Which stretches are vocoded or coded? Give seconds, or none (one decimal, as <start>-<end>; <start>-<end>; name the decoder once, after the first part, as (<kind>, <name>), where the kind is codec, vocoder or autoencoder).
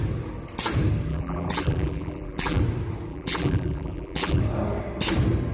1.1-2.6 (vocoder, BigVGAN v2); 3.1-4.4